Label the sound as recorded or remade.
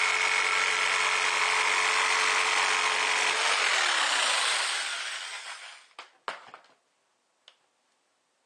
recorded